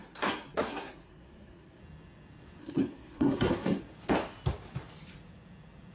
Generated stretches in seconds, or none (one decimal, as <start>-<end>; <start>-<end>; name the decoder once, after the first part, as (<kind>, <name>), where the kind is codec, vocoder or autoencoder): 0.0-1.8 (codec, SNAC); 2.6-3.8